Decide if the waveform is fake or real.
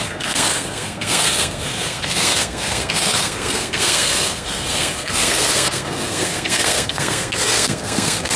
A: fake